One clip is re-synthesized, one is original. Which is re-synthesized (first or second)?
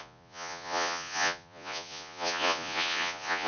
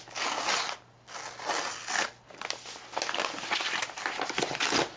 first